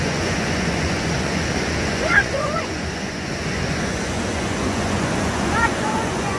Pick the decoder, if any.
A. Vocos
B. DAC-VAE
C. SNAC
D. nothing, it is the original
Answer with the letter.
A